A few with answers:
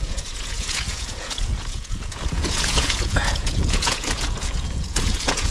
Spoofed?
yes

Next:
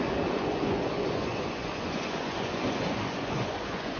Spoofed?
yes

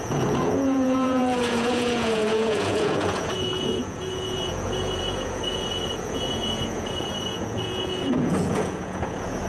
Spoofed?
yes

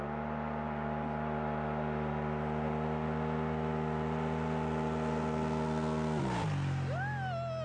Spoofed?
no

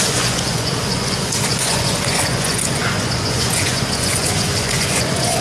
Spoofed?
yes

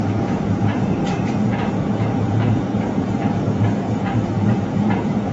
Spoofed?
yes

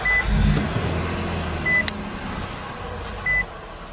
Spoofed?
no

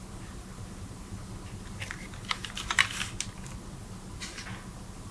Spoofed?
no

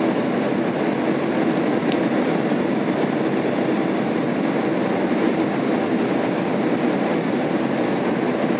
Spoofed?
no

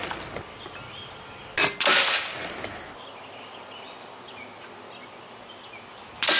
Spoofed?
no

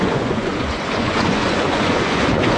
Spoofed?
yes